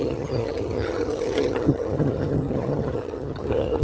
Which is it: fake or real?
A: fake